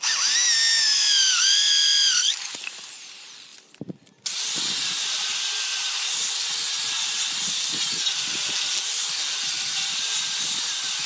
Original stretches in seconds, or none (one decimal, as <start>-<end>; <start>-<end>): 0.0-11.1